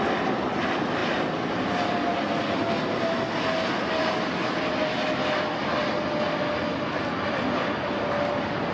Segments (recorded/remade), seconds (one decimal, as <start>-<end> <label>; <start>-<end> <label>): 0.0-8.7 recorded